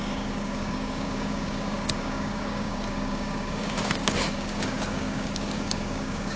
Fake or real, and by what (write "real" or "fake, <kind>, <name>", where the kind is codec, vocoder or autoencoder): fake, codec, DAC